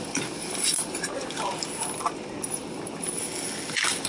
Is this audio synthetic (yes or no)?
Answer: no